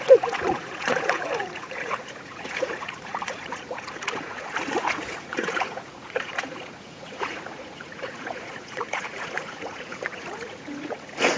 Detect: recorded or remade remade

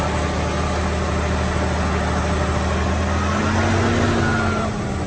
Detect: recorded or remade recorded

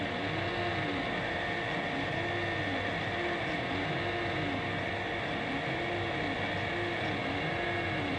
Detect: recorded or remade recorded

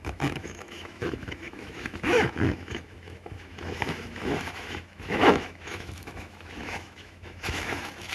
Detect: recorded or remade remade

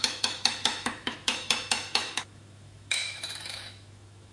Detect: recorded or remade remade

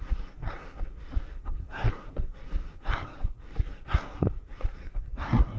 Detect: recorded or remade remade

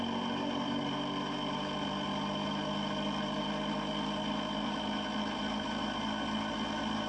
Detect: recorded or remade recorded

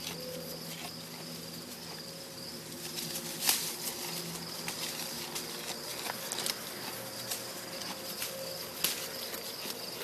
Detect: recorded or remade recorded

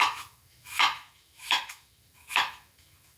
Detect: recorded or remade remade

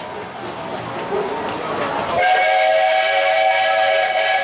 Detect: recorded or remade recorded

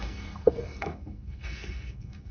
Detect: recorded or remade remade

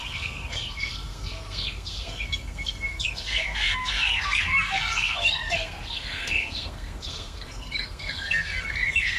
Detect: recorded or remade remade